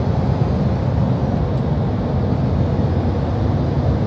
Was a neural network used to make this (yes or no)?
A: no